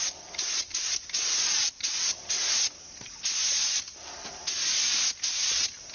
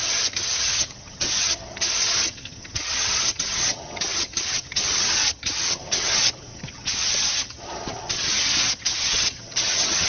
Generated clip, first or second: second